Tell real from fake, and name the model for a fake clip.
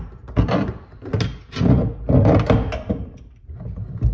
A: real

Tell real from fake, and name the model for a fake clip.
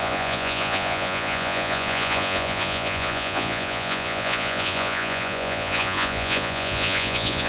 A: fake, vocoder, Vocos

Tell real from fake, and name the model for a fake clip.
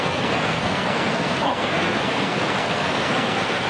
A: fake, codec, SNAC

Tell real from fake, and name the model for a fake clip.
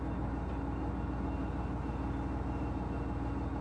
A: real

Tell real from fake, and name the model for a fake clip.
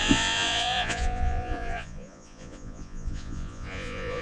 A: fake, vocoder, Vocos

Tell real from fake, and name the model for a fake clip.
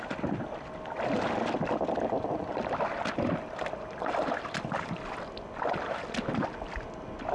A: real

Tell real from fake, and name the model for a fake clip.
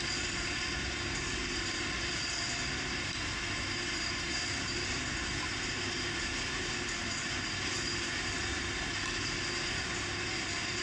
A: real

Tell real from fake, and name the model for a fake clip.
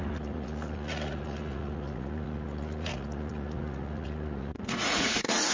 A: fake, vocoder, Vocos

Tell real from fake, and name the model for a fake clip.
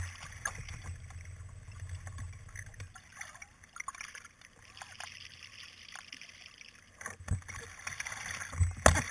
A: real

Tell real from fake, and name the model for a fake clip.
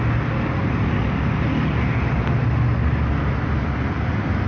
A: real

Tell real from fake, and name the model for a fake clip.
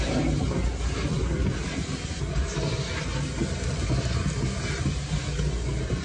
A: real